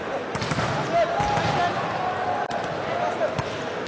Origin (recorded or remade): recorded